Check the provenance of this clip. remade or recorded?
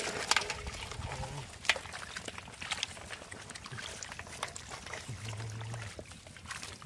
recorded